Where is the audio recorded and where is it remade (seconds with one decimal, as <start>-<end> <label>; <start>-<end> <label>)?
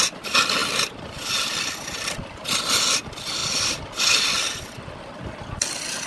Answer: 0.0-0.6 recorded; 0.6-3.0 remade; 3.0-6.1 recorded